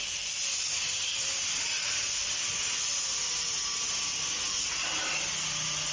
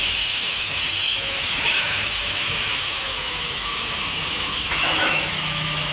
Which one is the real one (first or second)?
first